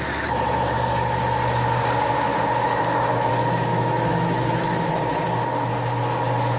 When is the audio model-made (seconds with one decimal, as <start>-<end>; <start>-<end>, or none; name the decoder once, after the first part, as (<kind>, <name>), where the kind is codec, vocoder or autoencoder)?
2.3-3.3 (autoencoder, DAC-VAE); 3.7-4.9